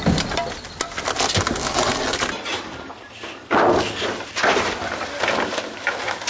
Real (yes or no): yes